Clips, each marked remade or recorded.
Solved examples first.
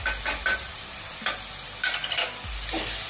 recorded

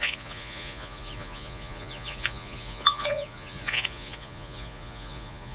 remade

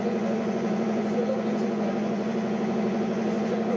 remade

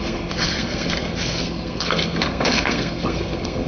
remade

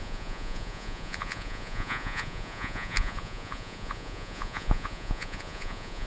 remade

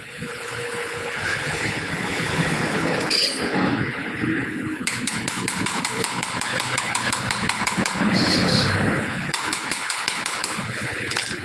remade